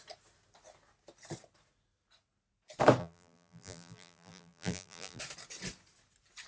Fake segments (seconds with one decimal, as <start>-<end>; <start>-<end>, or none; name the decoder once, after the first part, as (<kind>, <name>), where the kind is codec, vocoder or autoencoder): 3.0-5.2 (vocoder, BigVGAN v2)